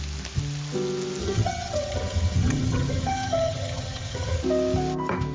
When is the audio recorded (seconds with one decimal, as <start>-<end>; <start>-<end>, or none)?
0.0-1.2; 4.4-5.3